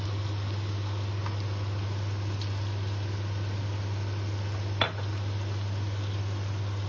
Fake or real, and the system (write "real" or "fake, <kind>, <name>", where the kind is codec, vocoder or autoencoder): real